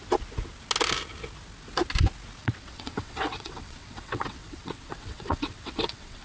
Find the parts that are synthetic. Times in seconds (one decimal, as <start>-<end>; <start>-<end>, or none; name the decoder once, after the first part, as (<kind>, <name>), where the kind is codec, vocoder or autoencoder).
2.4-6.2 (vocoder, WaveNeXt)